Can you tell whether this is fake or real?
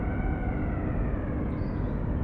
real